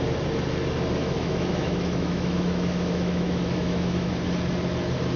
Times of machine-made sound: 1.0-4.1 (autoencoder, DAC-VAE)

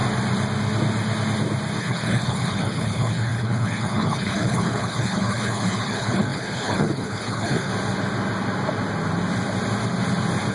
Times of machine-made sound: 1.8-7.7 (codec, HILCodec)